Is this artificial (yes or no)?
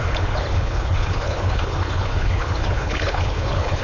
yes